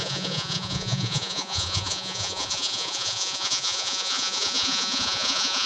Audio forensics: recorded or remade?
remade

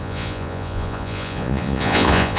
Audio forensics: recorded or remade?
remade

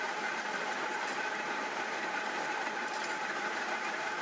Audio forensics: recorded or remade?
remade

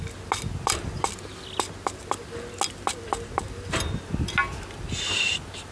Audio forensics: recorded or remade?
recorded